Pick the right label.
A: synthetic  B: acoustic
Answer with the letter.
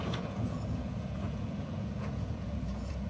A